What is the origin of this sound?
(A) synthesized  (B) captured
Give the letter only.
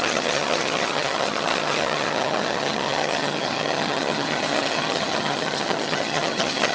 A